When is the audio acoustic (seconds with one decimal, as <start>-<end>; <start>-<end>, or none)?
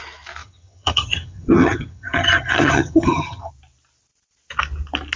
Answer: 0.0-0.4; 3.5-5.2